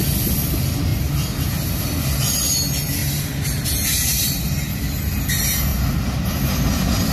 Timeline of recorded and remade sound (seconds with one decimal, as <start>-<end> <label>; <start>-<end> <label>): 0.0-0.9 recorded; 0.9-1.8 remade; 1.8-3.0 recorded; 3.0-4.6 remade; 4.6-5.7 recorded; 5.7-6.5 remade; 6.5-7.1 recorded